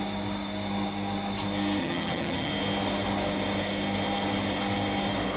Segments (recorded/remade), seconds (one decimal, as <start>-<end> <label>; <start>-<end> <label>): 0.0-1.8 recorded; 1.8-2.5 remade; 2.5-5.4 recorded

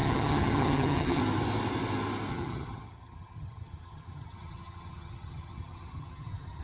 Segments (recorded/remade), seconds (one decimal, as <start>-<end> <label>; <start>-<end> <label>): 0.0-1.2 remade; 1.2-2.3 recorded; 2.3-6.6 remade